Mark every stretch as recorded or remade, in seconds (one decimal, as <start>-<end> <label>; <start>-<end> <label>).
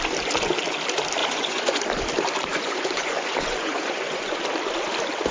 0.0-1.2 recorded; 1.2-1.8 remade; 1.8-2.5 recorded; 2.5-4.4 remade; 4.4-5.3 recorded